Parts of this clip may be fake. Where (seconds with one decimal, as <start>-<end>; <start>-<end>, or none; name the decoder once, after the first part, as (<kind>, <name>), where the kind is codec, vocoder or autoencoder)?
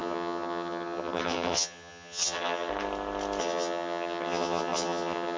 0.0-2.7 (vocoder, HiFi-GAN); 3.4-5.4